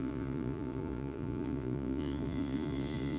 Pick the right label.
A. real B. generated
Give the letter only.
B